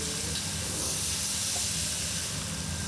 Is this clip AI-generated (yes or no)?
no